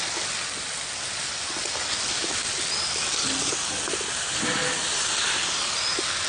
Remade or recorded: recorded